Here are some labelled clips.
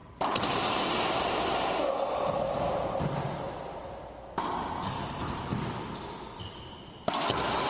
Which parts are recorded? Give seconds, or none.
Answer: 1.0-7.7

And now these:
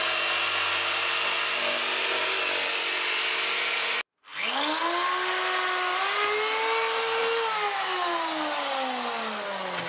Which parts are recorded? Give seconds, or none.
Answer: 0.0-9.9

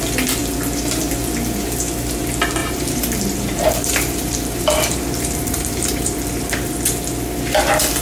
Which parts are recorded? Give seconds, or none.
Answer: 0.0-2.6; 6.8-8.0

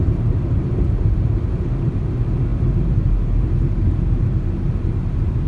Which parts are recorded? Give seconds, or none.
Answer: none

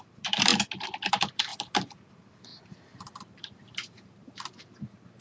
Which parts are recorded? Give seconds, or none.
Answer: 0.5-1.1